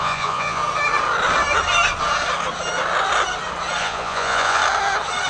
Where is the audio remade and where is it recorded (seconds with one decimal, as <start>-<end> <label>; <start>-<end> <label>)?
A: 0.0-0.6 remade; 0.6-3.8 recorded; 3.8-4.6 remade; 4.6-5.3 recorded